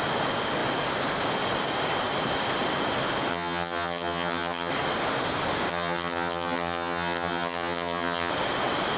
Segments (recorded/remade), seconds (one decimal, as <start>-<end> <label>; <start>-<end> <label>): 0.0-3.3 recorded; 3.3-4.7 remade; 4.7-5.7 recorded; 5.7-8.3 remade; 8.3-9.0 recorded